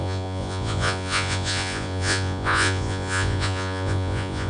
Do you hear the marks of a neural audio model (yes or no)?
yes